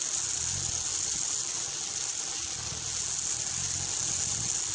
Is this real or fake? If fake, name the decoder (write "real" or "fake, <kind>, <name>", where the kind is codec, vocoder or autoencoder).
real